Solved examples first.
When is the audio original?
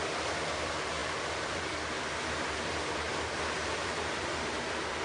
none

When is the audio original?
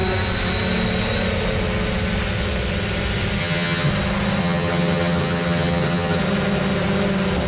0.0-3.4; 3.9-4.4; 6.2-7.5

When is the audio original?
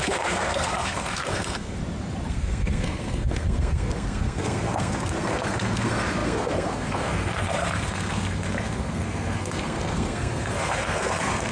1.8-2.3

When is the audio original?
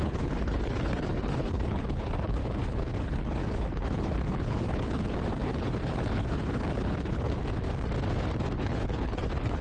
7.4-8.6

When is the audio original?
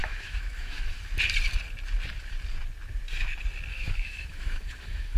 1.0-3.7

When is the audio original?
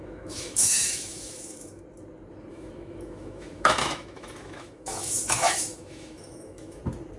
1.8-2.5; 6.8-7.2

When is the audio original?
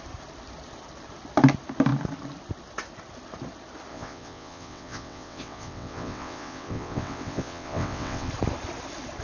0.0-3.9; 8.3-9.2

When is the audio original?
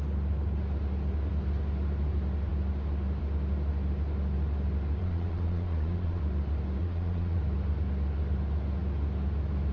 0.0-5.0; 6.2-6.8; 7.4-9.7